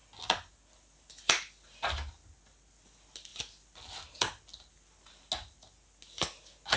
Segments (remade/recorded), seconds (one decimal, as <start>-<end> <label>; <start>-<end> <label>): 0.0-6.8 recorded